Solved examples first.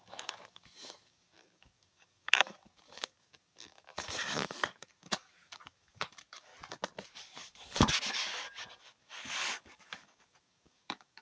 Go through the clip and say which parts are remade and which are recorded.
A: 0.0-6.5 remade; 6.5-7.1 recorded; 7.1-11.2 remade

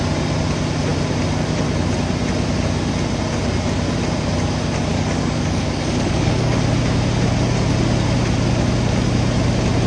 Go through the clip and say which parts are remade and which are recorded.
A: 0.0-4.9 recorded; 4.9-6.6 remade; 6.6-9.9 recorded

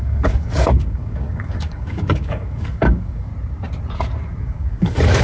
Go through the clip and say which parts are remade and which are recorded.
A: 0.0-3.3 remade; 3.3-4.4 recorded; 4.4-5.2 remade